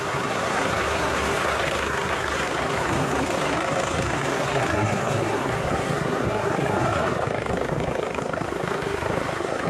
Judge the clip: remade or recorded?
remade